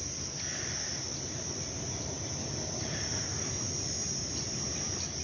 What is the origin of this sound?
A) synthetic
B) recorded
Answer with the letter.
B